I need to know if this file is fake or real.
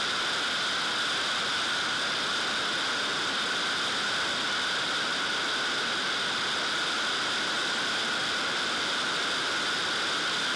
real